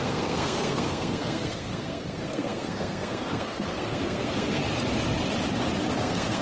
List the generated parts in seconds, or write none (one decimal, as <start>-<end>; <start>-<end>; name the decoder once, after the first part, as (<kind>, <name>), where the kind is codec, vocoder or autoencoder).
0.0-4.6 (codec, SNAC); 6.0-6.4